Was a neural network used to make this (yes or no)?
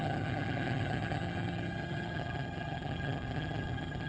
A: yes